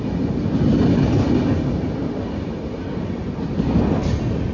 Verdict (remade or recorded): recorded